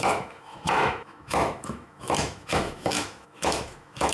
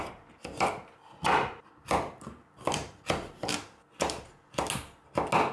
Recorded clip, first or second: second